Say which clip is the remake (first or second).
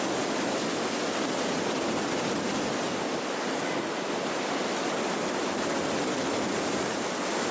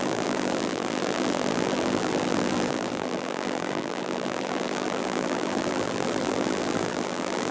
second